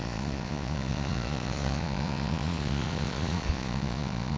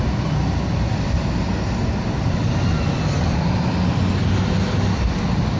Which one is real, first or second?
second